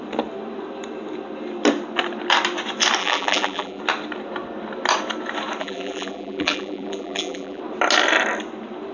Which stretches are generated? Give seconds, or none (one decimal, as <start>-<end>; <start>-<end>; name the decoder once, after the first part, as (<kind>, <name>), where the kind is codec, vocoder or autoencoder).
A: 3.0-3.8 (vocoder, BigVGAN v2); 5.6-7.6